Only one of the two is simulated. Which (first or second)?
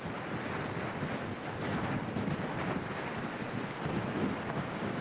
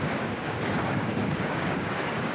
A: second